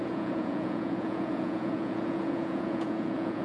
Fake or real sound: fake